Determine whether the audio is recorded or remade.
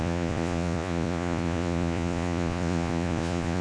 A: remade